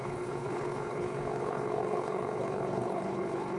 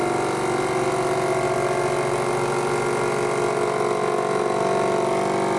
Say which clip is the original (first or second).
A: second